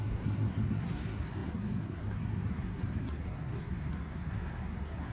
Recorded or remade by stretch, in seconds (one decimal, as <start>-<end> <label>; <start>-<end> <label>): 0.0-5.1 remade